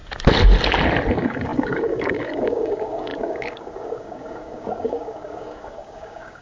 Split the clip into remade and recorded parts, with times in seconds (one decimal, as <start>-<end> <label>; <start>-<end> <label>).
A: 0.0-1.1 recorded; 1.1-6.4 remade